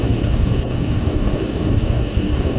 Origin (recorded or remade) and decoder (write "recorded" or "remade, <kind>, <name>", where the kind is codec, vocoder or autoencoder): remade, codec, DAC